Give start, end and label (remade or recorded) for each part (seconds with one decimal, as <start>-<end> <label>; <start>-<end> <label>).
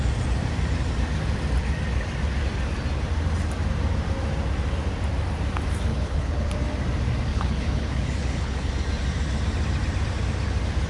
0.0-5.9 recorded; 5.9-6.5 remade; 6.5-7.3 recorded; 7.3-8.7 remade; 8.7-10.9 recorded